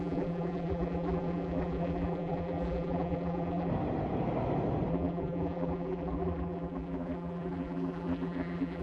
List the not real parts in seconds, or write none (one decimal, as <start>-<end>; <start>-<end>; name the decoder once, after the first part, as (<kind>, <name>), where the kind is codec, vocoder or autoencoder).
0.0-3.7 (vocoder, BigVGAN v2); 4.9-8.8